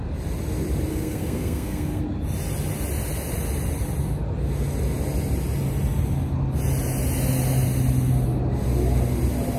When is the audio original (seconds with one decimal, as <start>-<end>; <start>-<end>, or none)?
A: 0.0-0.9; 2.0-9.6